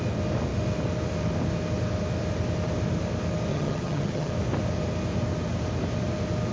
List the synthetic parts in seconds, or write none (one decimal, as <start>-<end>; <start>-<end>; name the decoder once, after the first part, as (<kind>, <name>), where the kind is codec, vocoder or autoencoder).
3.5-4.3 (vocoder, HiFi-GAN)